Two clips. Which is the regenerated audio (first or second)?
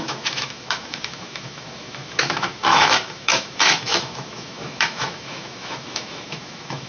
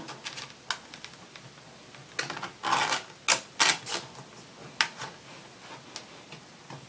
first